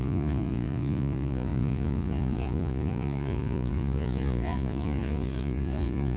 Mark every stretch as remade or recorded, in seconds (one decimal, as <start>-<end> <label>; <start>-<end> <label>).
0.0-6.2 remade